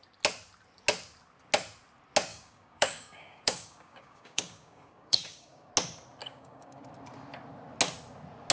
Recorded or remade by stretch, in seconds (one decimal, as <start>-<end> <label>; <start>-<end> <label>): 0.0-2.3 recorded; 2.3-5.7 remade; 5.7-6.2 recorded; 6.2-6.8 remade; 6.8-8.5 recorded